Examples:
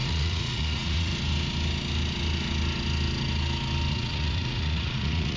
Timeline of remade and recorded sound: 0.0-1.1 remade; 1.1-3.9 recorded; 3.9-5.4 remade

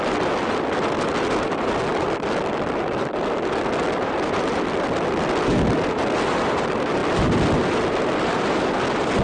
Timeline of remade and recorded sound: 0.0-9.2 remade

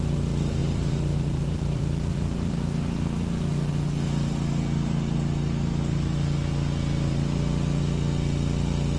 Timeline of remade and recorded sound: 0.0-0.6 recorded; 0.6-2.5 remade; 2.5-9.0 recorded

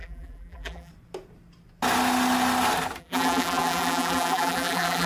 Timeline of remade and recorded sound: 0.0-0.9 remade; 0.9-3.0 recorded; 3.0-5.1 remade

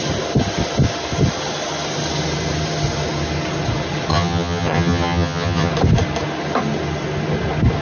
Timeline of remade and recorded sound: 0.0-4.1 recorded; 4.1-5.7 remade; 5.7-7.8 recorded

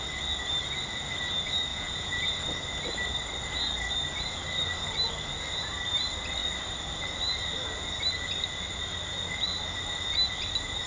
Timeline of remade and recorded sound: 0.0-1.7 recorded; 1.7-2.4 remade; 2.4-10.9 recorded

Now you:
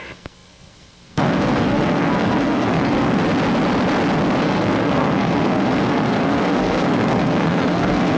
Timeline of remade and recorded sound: 0.0-3.2 remade; 3.2-4.4 recorded; 4.4-8.2 remade

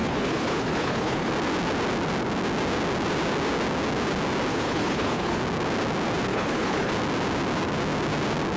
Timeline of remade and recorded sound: 0.0-1.3 remade; 1.3-4.5 recorded; 4.5-5.4 remade; 5.4-6.3 recorded; 6.3-6.9 remade; 6.9-8.6 recorded